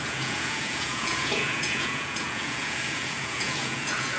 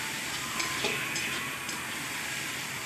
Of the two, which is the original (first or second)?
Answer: second